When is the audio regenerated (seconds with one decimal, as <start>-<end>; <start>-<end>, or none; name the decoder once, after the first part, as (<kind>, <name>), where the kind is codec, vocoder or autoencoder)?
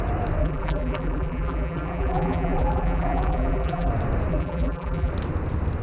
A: 0.4-3.9 (vocoder, BigVGAN v2); 4.3-5.1